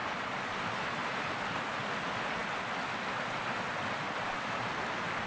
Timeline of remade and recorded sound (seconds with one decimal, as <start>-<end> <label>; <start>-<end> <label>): 0.0-1.3 remade; 1.3-5.3 recorded